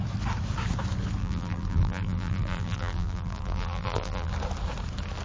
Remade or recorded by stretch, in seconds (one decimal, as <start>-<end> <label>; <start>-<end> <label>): 0.0-1.2 recorded; 1.2-4.3 remade; 4.3-5.2 recorded